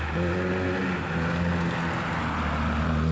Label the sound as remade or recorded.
recorded